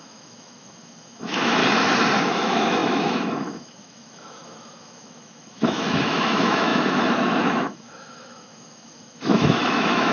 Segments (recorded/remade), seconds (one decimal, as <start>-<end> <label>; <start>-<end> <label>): 0.0-1.6 remade; 1.6-2.2 recorded; 2.2-10.1 remade